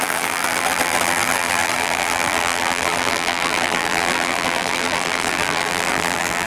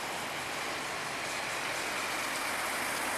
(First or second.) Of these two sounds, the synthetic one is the first